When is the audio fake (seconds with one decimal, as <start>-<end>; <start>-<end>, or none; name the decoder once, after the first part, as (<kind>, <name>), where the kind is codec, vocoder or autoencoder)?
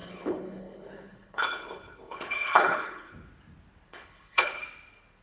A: 0.0-3.1 (codec, HILCodec); 3.9-4.6